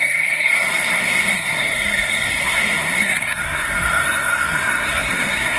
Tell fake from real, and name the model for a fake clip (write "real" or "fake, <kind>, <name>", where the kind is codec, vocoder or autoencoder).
fake, codec, SNAC